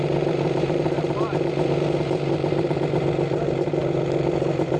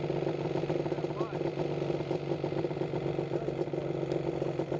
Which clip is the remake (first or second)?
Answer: first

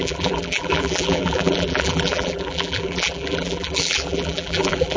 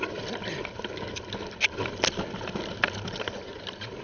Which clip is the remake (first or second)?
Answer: first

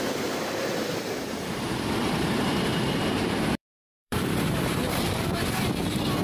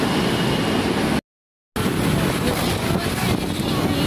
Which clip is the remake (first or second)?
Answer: first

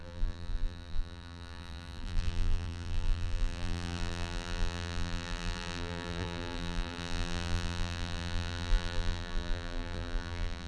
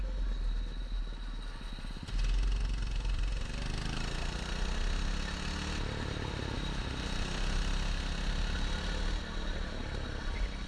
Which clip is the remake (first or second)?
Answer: first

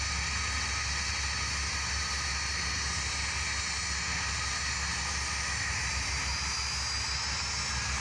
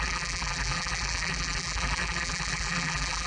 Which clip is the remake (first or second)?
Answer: second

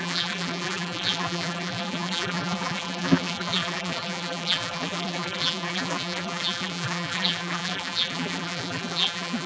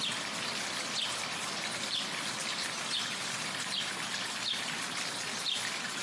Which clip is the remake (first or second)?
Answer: first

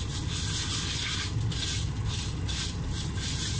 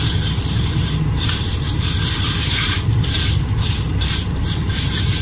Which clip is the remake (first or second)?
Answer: second